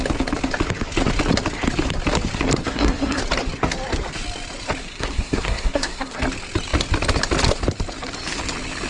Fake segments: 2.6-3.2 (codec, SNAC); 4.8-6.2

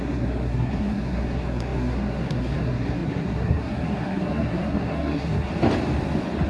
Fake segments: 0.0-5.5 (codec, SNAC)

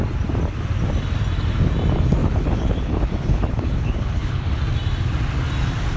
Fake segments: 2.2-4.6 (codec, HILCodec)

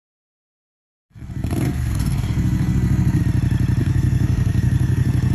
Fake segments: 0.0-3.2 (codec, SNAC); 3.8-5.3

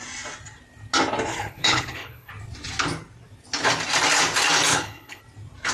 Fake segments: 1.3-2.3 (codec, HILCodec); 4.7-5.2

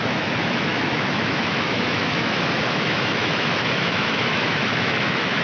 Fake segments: 0.0-5.4 (autoencoder, DAC-VAE)

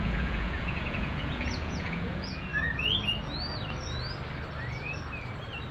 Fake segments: 0.0-2.5 (vocoder, Vocos)